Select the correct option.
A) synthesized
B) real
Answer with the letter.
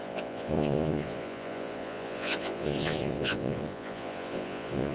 A